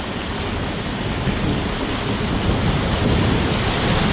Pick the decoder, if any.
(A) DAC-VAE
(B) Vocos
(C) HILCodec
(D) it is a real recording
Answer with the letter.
D